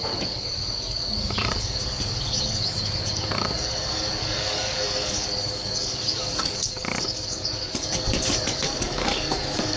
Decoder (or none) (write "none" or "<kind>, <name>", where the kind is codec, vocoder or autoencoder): codec, DAC